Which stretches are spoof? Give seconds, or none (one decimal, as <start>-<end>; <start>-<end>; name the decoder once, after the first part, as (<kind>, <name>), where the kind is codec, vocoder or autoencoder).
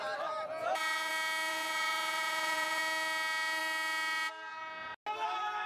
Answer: 0.6-1.1 (vocoder, Vocos); 1.5-2.8